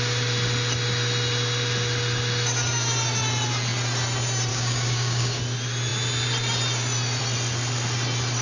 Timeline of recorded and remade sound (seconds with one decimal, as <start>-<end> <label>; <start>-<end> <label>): 0.0-4.5 recorded; 4.5-5.4 remade; 5.4-8.4 recorded